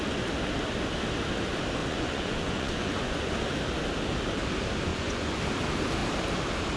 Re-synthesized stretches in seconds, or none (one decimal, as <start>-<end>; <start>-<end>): 1.8-3.3; 4.9-5.4

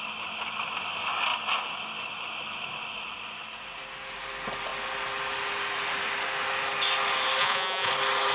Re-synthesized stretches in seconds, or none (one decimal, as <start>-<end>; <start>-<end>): 7.4-7.9

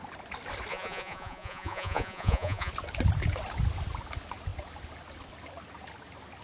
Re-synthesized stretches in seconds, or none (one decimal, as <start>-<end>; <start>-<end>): 0.7-2.7

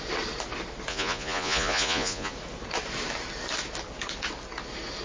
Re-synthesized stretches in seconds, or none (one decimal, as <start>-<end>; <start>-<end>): 0.9-2.3